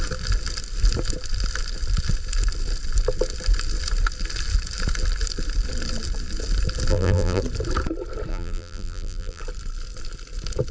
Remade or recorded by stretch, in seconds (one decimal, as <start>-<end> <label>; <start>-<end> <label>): 0.0-6.9 recorded; 6.9-7.4 remade; 7.4-8.3 recorded; 8.3-9.4 remade; 9.4-10.7 recorded